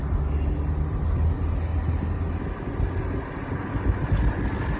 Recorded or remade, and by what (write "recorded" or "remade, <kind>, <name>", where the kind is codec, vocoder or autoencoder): recorded